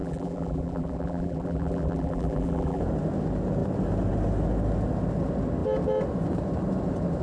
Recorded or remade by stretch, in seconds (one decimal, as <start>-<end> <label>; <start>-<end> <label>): 0.0-2.8 remade; 2.8-7.2 recorded